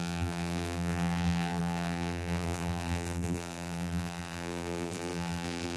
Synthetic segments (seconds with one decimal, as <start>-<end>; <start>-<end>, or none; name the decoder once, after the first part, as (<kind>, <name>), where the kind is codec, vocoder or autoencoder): 0.0-5.8 (vocoder, BigVGAN v2)